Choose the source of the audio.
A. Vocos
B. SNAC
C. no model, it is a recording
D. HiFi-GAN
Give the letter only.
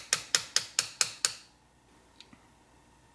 C